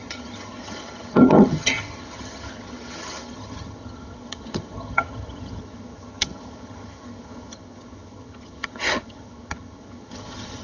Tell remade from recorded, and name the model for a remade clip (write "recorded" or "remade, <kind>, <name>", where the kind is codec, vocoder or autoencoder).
remade, vocoder, HiFi-GAN